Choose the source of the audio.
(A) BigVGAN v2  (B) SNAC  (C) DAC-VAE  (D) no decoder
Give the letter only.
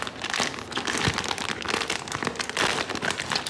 D